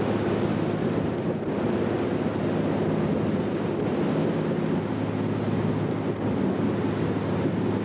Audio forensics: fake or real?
real